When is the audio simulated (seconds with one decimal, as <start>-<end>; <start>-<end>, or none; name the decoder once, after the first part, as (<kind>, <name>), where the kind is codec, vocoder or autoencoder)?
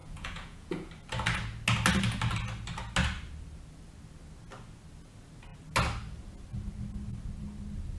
0.0-0.9 (vocoder, Vocos)